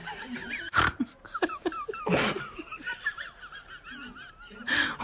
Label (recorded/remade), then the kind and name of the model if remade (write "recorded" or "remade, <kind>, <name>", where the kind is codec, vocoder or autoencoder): remade, vocoder, BigVGAN v2